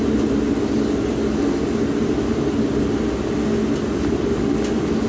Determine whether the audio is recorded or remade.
recorded